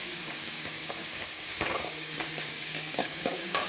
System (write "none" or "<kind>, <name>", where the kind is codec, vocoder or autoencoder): codec, DAC